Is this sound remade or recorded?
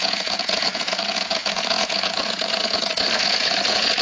remade